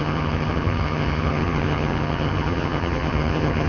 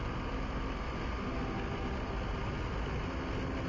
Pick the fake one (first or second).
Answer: first